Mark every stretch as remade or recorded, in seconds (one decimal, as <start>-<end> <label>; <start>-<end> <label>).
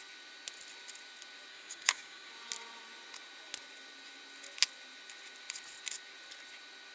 0.0-1.5 recorded; 1.5-2.3 remade; 2.3-6.9 recorded